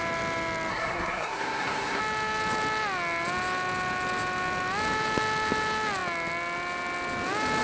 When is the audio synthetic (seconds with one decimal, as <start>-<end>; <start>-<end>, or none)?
0.7-2.0

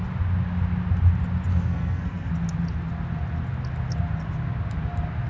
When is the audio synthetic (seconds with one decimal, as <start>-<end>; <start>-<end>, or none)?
1.5-2.3

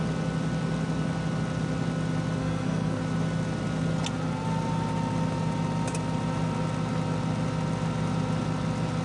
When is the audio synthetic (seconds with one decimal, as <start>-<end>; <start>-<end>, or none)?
2.4-3.0

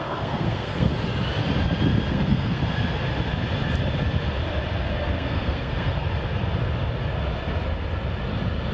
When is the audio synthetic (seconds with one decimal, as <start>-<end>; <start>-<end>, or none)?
0.0-0.9; 2.1-2.6; 4.9-5.9

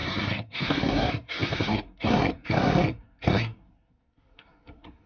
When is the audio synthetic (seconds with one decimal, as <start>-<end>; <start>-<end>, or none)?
0.0-5.1